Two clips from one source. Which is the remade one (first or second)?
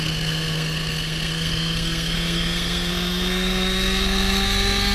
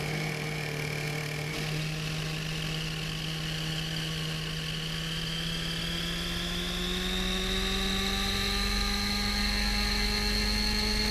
first